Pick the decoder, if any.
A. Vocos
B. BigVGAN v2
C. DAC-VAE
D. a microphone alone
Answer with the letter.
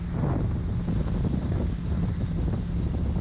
D